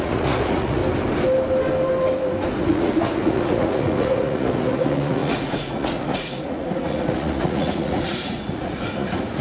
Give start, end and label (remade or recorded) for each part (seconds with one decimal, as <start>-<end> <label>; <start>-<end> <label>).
0.0-0.8 remade; 0.8-2.6 recorded; 2.6-9.4 remade